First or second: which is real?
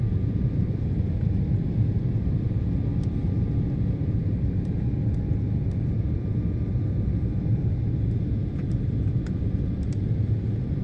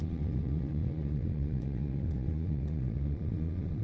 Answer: first